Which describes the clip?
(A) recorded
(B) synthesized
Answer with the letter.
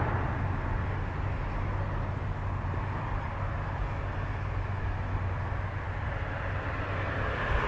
A